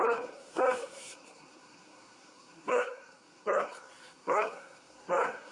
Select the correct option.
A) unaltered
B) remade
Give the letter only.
B